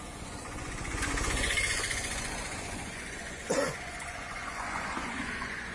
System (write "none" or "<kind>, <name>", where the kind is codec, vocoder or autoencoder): vocoder, Vocos